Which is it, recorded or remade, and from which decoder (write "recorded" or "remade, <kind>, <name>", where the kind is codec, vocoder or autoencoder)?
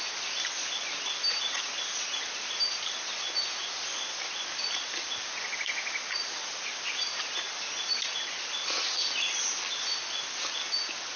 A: recorded